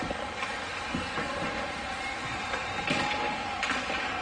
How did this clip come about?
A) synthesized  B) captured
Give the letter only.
B